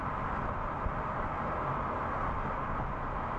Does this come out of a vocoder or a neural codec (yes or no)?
no